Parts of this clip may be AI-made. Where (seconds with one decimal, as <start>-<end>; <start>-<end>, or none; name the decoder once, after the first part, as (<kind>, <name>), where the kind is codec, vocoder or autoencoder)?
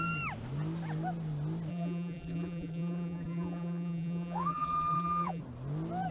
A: 1.7-5.4 (vocoder, BigVGAN v2)